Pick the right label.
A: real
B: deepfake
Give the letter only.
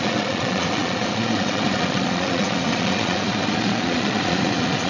B